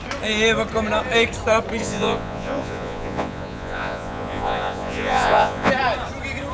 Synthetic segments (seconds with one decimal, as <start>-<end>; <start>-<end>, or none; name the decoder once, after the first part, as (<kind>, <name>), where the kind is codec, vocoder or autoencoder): 1.8-5.7 (vocoder, Vocos)